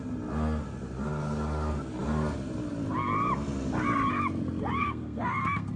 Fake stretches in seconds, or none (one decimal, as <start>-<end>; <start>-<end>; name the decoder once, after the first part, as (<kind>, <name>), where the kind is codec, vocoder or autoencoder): 4.8-5.8 (codec, SNAC)